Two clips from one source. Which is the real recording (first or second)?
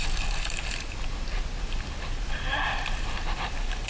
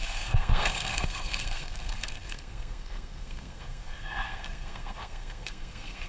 first